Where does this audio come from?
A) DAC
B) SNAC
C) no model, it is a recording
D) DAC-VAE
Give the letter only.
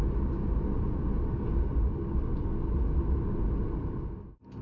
C